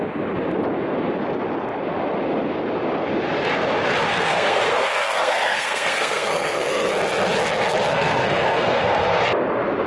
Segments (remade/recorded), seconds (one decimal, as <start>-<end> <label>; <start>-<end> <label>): 0.0-4.1 recorded; 4.1-6.9 remade; 6.9-7.9 recorded; 7.9-9.2 remade; 9.2-9.9 recorded